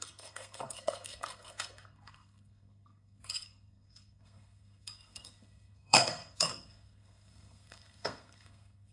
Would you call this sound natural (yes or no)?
no